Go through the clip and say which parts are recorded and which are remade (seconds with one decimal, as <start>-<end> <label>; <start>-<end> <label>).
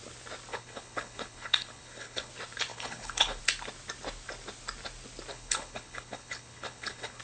0.0-0.5 recorded; 0.5-2.3 remade; 2.3-2.7 recorded; 2.7-3.4 remade; 3.4-5.3 recorded; 5.3-7.2 remade